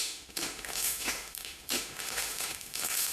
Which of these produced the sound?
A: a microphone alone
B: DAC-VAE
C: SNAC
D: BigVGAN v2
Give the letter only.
B